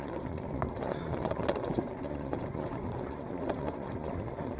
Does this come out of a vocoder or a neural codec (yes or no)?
yes